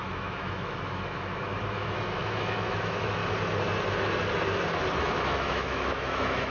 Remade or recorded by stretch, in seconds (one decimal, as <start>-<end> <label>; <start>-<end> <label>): 0.0-3.2 remade; 3.2-5.0 recorded; 5.0-6.5 remade